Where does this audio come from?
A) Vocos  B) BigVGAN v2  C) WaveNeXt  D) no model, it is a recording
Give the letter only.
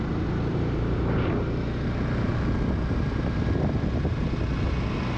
D